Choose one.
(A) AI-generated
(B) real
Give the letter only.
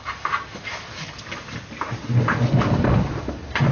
B